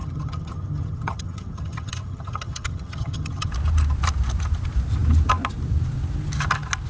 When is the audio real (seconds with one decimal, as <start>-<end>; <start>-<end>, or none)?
3.5-6.9